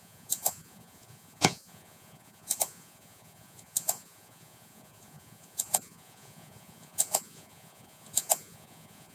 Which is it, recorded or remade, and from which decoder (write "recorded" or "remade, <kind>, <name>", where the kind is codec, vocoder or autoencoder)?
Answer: remade, vocoder, Vocos